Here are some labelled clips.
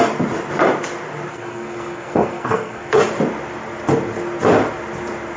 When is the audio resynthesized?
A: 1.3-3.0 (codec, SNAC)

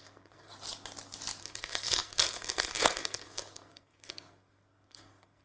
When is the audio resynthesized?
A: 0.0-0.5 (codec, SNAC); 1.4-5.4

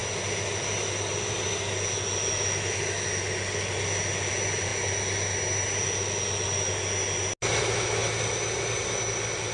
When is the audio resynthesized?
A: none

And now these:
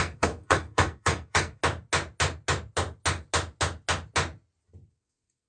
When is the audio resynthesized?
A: 0.0-1.6 (codec, SNAC); 4.9-5.5